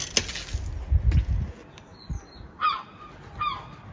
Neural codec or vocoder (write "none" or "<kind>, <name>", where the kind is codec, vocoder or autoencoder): none